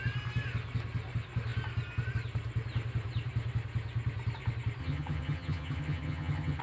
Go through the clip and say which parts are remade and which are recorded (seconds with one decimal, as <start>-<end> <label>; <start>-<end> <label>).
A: 0.0-4.8 recorded; 4.8-6.6 remade

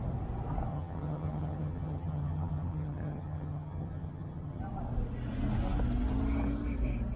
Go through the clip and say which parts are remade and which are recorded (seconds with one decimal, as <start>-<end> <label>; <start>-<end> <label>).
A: 0.0-0.7 recorded; 0.7-4.6 remade; 4.6-7.2 recorded

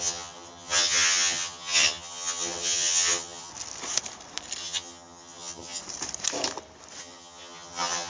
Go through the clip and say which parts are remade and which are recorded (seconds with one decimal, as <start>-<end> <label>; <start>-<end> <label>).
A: 0.0-3.5 remade; 3.5-4.6 recorded; 4.6-5.8 remade; 5.8-7.0 recorded; 7.0-8.1 remade

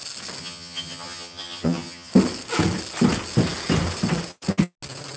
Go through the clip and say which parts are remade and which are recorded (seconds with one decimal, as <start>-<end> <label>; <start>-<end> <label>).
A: 0.0-0.4 recorded; 0.4-2.1 remade; 2.1-5.2 recorded

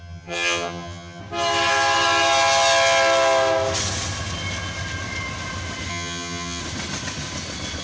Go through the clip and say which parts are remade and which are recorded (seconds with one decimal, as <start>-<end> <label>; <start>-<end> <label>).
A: 0.0-1.2 remade; 1.2-5.9 recorded; 5.9-6.6 remade; 6.6-7.8 recorded